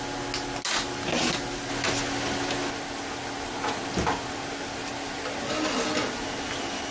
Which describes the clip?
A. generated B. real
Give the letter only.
B